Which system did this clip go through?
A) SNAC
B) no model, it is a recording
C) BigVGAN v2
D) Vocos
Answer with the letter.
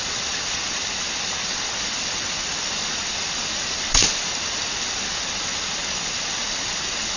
B